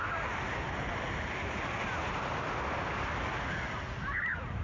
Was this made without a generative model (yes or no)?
yes